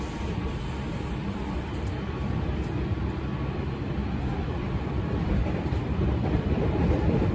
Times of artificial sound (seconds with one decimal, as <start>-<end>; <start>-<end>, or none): 1.2-2.4; 4.0-7.3